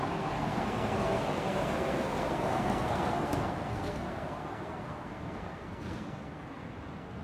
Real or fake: fake